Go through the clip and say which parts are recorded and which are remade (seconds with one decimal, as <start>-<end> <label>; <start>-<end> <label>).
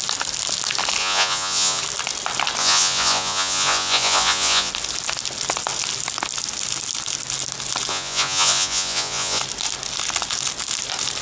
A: 0.0-1.0 recorded; 1.0-1.8 remade; 1.8-2.6 recorded; 2.6-4.7 remade; 4.7-7.9 recorded; 7.9-9.4 remade; 9.4-11.2 recorded